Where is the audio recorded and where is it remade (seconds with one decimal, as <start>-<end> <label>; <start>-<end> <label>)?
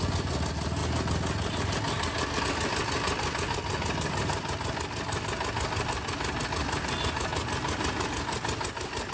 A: 0.0-9.1 recorded